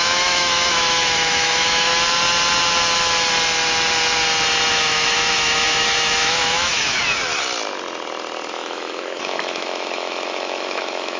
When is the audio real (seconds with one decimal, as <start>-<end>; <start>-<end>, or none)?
1.9-4.7; 7.0-8.5